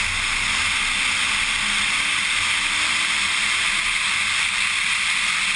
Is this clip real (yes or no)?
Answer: yes